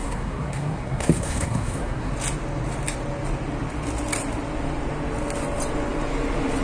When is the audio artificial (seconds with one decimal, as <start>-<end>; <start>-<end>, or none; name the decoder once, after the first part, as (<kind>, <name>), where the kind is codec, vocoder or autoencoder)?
0.0-2.1 (codec, SNAC)